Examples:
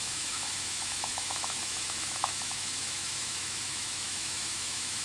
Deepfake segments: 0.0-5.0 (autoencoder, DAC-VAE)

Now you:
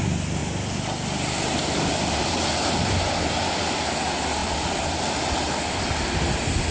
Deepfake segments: none

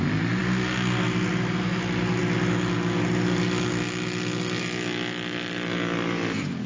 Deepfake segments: none

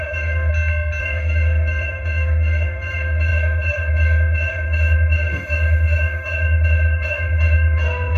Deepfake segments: 0.0-0.5 (autoencoder, DAC-VAE); 1.0-8.2

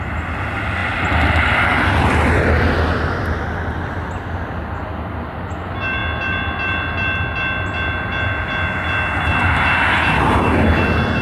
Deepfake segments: none

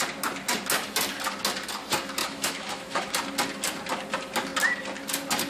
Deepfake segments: 2.2-3.1 (autoencoder, DAC-VAE)

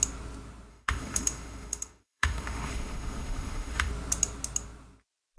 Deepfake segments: 0.7-3.9 (autoencoder, DAC-VAE)

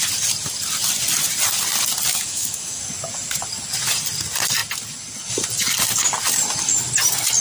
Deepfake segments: 2.1-2.8 (autoencoder, DAC-VAE)